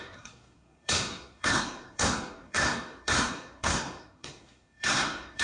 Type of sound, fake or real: fake